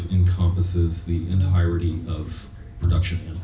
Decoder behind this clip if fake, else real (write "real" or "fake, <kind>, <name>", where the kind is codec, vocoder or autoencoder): real